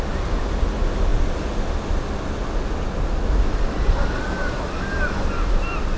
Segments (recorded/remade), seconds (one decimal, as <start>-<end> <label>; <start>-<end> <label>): 0.0-6.0 recorded